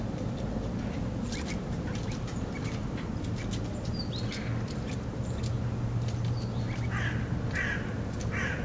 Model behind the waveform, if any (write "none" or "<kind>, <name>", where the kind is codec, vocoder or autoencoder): none